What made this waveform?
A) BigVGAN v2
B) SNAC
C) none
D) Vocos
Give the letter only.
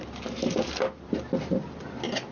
C